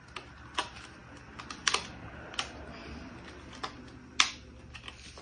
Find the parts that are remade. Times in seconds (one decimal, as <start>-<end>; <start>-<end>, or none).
none